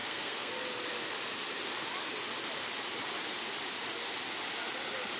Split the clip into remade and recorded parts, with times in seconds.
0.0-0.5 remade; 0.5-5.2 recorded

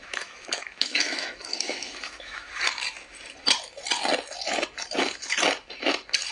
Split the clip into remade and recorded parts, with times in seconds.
0.0-2.5 remade; 2.5-6.3 recorded

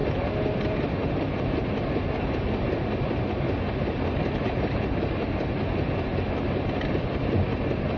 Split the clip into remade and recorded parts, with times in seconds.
0.0-8.0 recorded